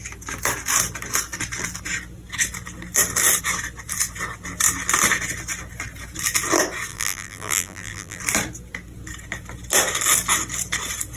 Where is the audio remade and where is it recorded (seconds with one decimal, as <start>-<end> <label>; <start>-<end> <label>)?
0.0-6.9 recorded; 6.9-8.2 remade; 8.2-11.2 recorded